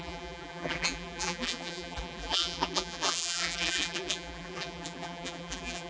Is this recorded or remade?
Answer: remade